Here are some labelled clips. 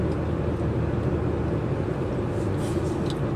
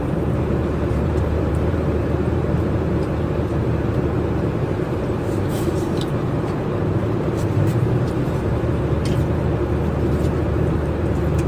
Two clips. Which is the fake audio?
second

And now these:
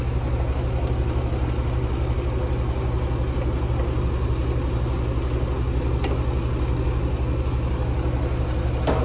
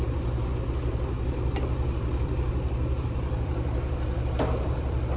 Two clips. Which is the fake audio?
second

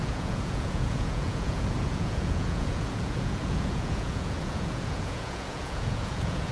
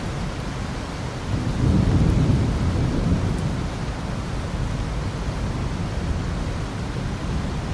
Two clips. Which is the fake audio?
first